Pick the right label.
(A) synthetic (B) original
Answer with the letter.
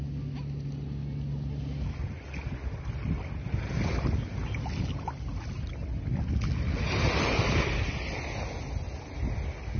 B